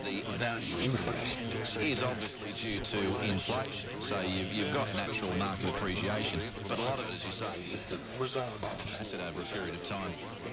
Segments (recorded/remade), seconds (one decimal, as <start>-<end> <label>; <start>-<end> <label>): 0.0-0.4 recorded; 0.4-1.4 remade; 1.4-7.5 recorded; 7.5-9.0 remade; 9.0-10.5 recorded

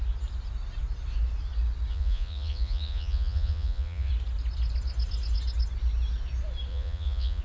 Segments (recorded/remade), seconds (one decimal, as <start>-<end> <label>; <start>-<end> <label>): 0.0-1.9 recorded; 1.9-4.1 remade; 4.1-6.7 recorded; 6.7-7.4 remade

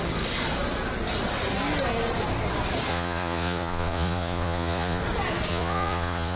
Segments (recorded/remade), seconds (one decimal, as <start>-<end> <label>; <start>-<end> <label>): 0.0-2.9 recorded; 2.9-5.0 remade; 5.0-5.5 recorded; 5.5-6.4 remade

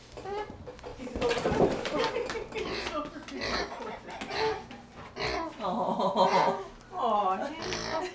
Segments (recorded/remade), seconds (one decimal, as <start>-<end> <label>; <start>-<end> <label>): 0.0-0.9 recorded; 0.9-2.1 remade; 2.1-8.1 recorded

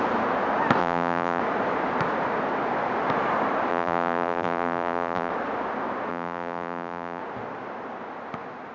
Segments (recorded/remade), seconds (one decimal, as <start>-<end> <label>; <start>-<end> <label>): 0.0-0.8 recorded; 0.8-1.4 remade; 1.4-3.7 recorded; 3.7-5.3 remade; 5.3-6.1 recorded; 6.1-7.2 remade; 7.2-8.7 recorded

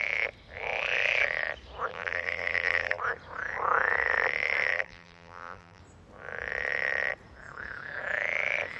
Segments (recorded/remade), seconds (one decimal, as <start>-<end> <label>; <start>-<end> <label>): 0.0-1.9 recorded; 1.9-3.0 remade; 3.0-4.7 recorded; 4.7-5.8 remade; 5.8-8.8 recorded

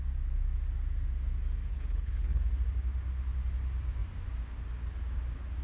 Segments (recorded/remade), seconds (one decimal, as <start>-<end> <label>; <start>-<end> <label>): 0.0-1.7 recorded; 1.7-2.4 remade; 2.4-5.6 recorded

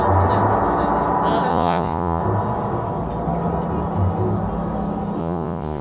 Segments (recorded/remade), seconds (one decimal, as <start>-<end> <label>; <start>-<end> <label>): 0.0-1.5 recorded; 1.5-2.2 remade; 2.2-5.2 recorded; 5.2-5.8 remade